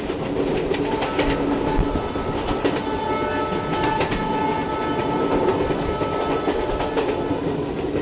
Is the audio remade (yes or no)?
no